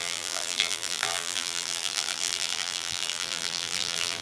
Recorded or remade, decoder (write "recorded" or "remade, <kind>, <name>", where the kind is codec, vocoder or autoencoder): remade, vocoder, BigVGAN v2